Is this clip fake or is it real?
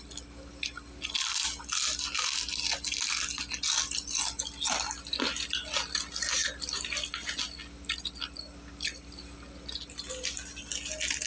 real